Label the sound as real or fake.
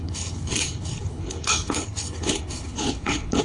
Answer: fake